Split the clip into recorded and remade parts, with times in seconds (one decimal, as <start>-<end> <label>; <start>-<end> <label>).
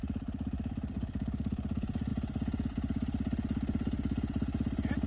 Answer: 0.0-2.1 remade; 2.1-5.1 recorded